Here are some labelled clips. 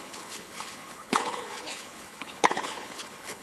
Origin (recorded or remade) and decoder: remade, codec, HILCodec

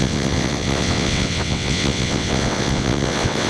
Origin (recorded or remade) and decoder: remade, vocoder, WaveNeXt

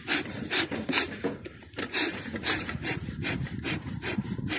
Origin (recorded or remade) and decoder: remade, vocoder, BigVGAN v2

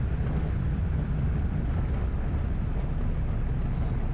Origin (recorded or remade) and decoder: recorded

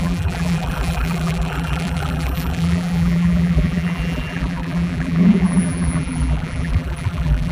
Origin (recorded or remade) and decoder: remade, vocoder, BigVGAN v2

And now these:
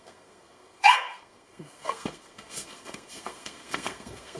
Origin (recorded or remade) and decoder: remade, codec, SNAC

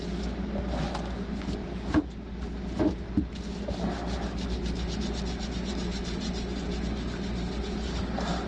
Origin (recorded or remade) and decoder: recorded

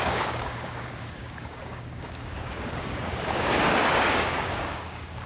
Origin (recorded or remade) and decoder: remade, codec, DAC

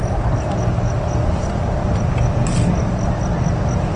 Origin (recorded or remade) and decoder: recorded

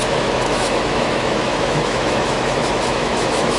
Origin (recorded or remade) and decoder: remade, autoencoder, DAC-VAE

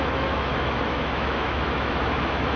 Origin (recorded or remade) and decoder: remade, autoencoder, DAC-VAE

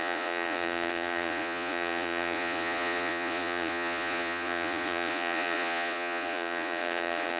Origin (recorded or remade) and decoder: remade, vocoder, Vocos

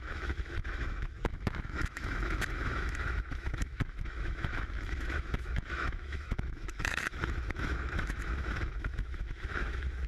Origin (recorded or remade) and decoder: remade, autoencoder, DAC-VAE